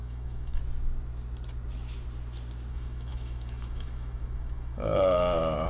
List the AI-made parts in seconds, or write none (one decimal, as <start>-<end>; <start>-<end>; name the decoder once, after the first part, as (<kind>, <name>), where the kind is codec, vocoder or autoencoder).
0.0-0.6 (autoencoder, DAC-VAE); 2.7-5.7